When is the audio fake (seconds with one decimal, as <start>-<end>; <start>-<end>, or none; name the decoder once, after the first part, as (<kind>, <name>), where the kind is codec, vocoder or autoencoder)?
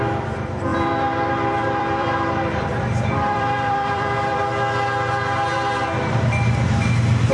0.7-4.4 (vocoder, BigVGAN v2)